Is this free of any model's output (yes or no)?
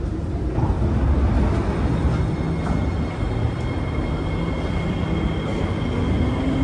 yes